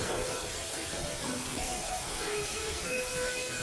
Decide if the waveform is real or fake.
fake